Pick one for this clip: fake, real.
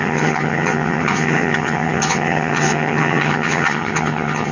fake